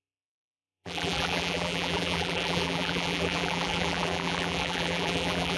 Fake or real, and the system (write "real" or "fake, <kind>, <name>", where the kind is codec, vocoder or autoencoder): fake, vocoder, BigVGAN v2